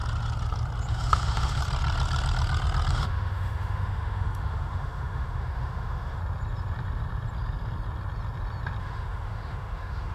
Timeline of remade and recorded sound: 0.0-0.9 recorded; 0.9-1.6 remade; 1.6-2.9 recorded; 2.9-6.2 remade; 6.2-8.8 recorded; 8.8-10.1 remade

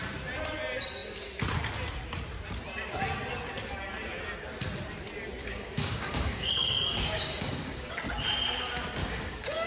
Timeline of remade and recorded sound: 0.0-5.4 recorded; 5.4-7.9 remade; 7.9-9.0 recorded; 9.0-9.7 remade

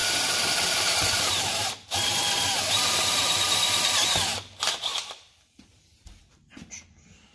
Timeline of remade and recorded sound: 0.0-1.0 remade; 1.0-4.9 recorded; 4.9-6.2 remade; 6.2-7.3 recorded

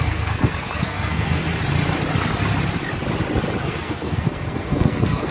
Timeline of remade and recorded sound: 0.0-1.4 remade; 1.4-3.6 recorded; 3.6-5.3 remade

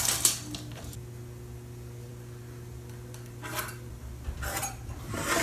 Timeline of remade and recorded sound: 0.0-5.4 recorded

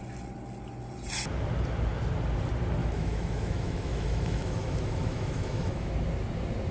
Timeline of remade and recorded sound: 0.0-2.8 recorded; 2.8-5.9 remade; 5.9-6.7 recorded